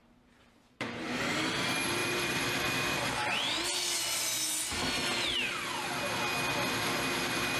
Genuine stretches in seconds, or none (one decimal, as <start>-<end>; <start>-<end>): 1.2-2.0; 3.6-7.6